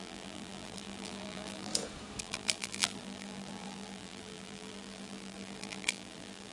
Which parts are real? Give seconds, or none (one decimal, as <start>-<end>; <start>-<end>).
1.7-2.2